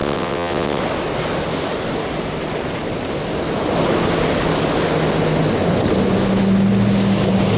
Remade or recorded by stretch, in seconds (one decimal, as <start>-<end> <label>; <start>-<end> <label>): 0.0-0.8 remade; 0.8-7.6 recorded

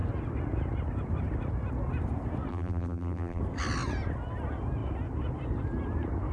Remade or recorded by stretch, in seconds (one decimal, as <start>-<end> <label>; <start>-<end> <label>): 0.0-2.5 recorded; 2.5-3.4 remade; 3.4-6.3 recorded

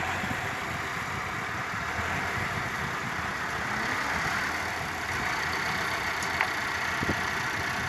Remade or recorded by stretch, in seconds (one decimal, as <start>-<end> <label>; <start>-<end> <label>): 0.0-7.9 recorded